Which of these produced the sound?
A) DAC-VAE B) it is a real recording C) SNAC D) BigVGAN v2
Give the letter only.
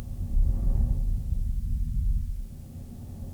B